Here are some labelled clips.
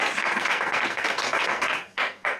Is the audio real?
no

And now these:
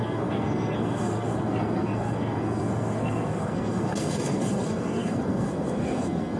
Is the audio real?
no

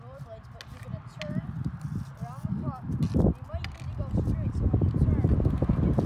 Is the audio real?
yes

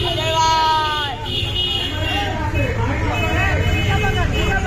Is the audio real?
yes